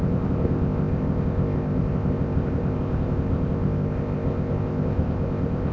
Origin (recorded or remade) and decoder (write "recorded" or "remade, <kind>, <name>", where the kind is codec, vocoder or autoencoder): remade, codec, ZipCodec